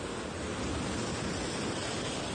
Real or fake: real